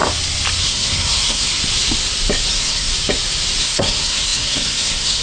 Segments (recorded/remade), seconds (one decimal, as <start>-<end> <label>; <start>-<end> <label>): 0.0-0.6 recorded; 0.6-1.6 remade; 1.6-2.5 recorded; 2.5-2.9 remade; 2.9-3.6 recorded; 3.6-5.2 remade